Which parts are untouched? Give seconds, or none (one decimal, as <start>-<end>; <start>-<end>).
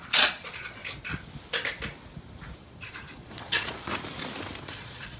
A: 0.8-2.6; 3.9-4.6